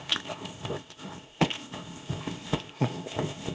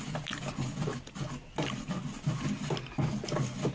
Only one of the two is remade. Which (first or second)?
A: first